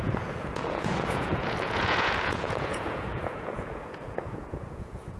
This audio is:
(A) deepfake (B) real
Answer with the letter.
A